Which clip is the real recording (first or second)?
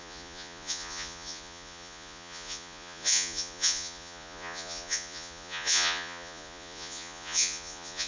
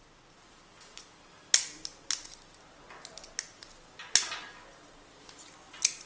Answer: second